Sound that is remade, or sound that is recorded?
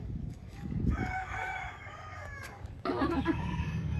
remade